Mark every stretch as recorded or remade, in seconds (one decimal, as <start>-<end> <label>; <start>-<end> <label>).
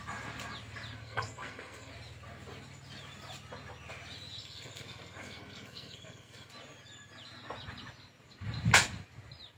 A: 0.0-1.0 recorded; 1.0-1.9 remade; 1.9-4.4 recorded; 4.4-6.5 remade; 6.5-9.6 recorded